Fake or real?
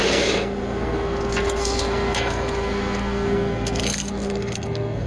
fake